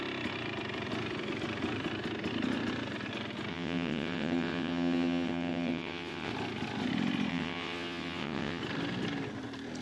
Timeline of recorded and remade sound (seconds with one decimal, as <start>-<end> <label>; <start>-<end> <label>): 0.0-3.5 recorded; 3.5-6.3 remade; 6.3-7.3 recorded; 7.3-8.6 remade; 8.6-9.8 recorded